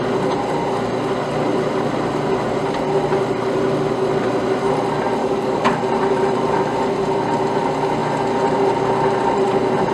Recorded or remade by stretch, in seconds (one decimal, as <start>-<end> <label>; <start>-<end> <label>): 0.0-5.2 recorded; 5.2-5.8 remade; 5.8-9.9 recorded